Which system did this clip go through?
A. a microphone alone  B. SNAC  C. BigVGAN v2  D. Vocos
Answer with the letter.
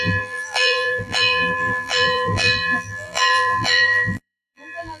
C